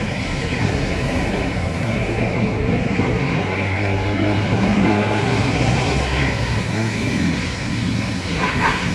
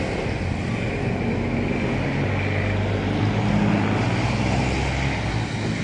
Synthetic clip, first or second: first